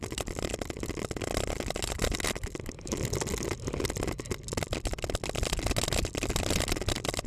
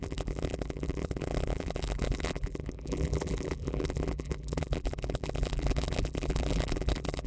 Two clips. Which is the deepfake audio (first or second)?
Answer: second